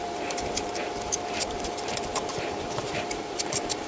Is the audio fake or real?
fake